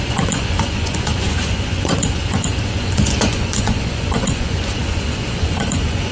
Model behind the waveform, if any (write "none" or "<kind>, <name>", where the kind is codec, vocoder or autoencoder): vocoder, Vocos